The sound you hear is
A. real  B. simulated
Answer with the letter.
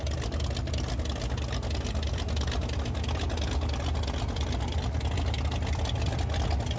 A